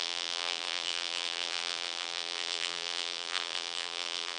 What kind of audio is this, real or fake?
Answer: fake